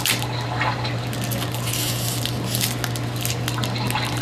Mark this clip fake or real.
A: real